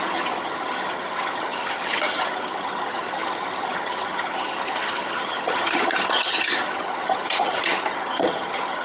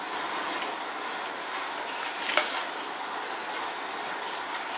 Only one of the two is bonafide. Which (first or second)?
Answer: second